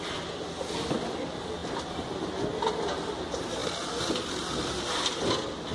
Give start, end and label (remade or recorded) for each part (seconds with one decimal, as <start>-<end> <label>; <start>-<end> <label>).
0.0-5.7 recorded